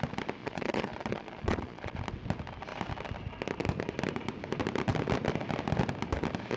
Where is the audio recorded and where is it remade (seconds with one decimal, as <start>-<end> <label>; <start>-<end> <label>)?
0.0-0.4 recorded; 0.4-2.0 remade; 2.0-6.6 recorded

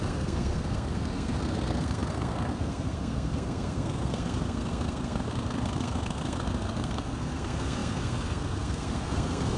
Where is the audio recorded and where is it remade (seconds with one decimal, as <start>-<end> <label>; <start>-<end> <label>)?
0.0-9.6 remade

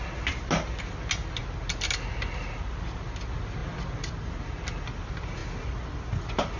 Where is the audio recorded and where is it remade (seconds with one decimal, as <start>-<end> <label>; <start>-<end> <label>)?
0.0-6.6 recorded

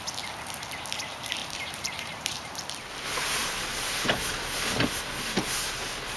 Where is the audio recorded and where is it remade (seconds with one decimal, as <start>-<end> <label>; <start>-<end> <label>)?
0.0-1.4 recorded; 1.4-2.6 remade; 2.6-3.4 recorded; 3.4-3.9 remade; 3.9-6.2 recorded

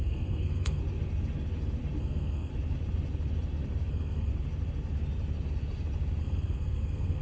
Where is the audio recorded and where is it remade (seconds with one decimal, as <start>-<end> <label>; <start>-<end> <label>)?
0.0-0.8 remade; 0.8-2.0 recorded; 2.0-2.5 remade; 2.5-3.9 recorded; 3.9-4.3 remade; 4.3-6.2 recorded; 6.2-7.2 remade

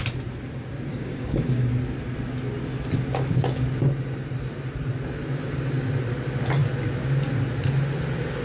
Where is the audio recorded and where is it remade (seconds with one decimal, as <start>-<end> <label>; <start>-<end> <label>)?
0.0-0.9 recorded; 0.9-1.7 remade; 1.7-8.4 recorded